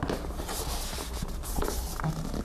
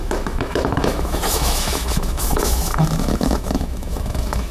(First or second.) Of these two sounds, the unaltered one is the first